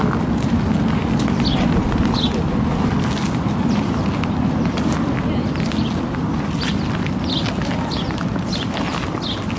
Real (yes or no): yes